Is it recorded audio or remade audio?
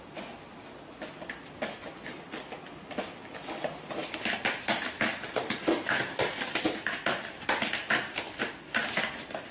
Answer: recorded